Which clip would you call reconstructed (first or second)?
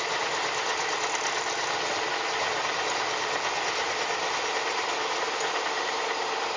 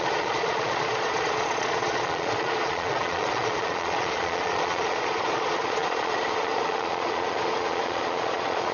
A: second